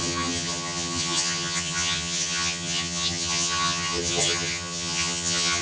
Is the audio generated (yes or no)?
yes